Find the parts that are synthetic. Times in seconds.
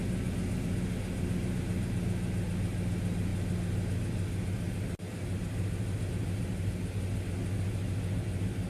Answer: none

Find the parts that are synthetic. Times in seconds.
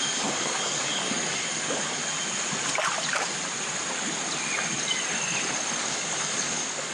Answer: 0.0-2.0 (codec, DAC); 5.8-6.9